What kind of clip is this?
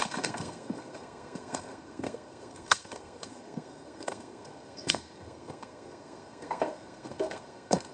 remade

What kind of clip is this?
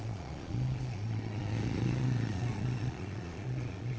remade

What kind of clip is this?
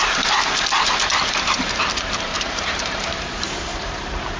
remade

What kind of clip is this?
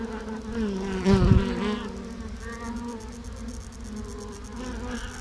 recorded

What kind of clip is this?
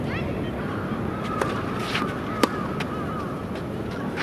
recorded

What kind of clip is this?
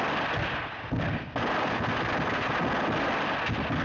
recorded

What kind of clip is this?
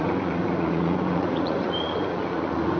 remade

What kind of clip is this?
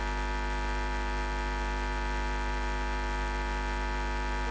recorded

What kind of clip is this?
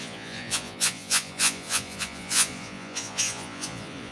remade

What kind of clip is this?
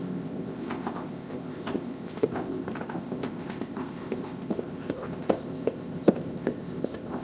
remade